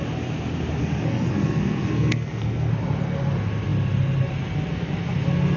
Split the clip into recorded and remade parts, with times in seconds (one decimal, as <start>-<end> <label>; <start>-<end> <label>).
0.0-0.8 recorded; 0.8-2.7 remade; 2.7-5.6 recorded